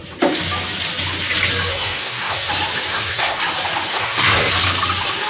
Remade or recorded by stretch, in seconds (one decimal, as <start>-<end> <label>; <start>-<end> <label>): 0.0-1.7 recorded; 1.7-2.5 remade; 2.5-2.9 recorded; 2.9-3.4 remade; 3.4-3.9 recorded; 3.9-4.5 remade; 4.5-5.3 recorded